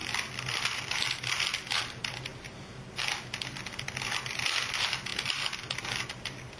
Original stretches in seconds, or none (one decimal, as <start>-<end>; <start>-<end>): 0.0-6.6